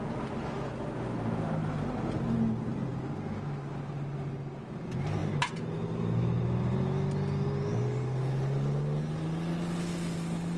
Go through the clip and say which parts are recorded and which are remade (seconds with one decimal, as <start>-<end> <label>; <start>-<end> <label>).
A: 0.0-10.6 recorded